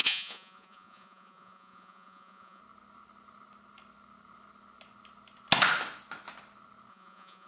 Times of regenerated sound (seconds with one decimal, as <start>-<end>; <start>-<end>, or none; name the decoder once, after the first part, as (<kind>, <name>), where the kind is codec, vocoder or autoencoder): 0.0-2.6 (vocoder, Vocos); 6.9-7.5